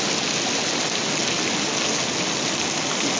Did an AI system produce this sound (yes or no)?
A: no